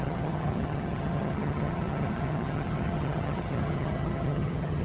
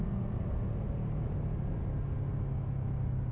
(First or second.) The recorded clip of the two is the second